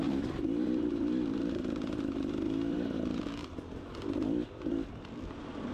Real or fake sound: fake